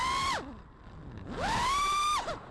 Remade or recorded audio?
recorded